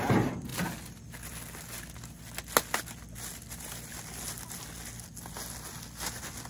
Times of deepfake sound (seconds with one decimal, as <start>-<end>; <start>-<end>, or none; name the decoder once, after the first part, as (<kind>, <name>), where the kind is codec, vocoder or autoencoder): none